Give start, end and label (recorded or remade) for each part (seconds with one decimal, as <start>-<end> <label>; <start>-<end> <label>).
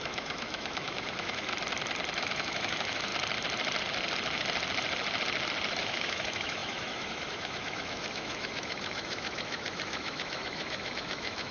0.0-1.5 remade; 1.5-2.2 recorded; 2.2-3.1 remade; 3.1-5.8 recorded; 5.8-11.5 remade